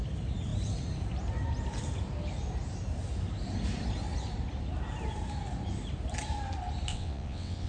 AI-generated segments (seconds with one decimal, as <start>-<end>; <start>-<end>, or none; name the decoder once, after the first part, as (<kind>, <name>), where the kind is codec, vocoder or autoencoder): 6.9-7.7 (vocoder, WaveNeXt)